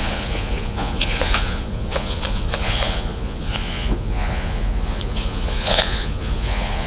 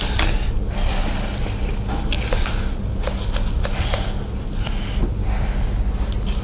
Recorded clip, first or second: second